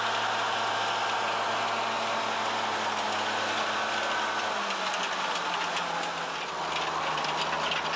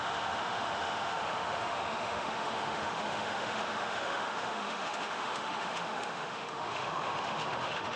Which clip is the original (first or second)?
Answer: first